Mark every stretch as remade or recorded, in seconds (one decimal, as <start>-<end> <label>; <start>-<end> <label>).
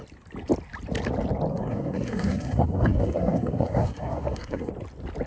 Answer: 0.0-1.5 recorded; 1.5-4.7 remade; 4.7-5.3 recorded